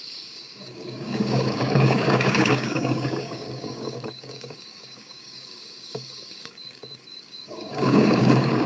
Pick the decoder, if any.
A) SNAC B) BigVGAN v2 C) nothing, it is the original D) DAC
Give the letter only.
D